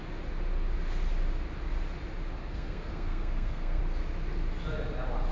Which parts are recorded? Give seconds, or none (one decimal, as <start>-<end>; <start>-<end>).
0.0-2.4; 3.8-5.3